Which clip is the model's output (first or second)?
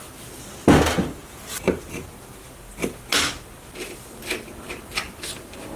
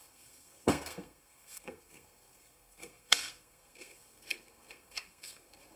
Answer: second